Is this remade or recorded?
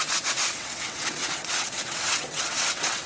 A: remade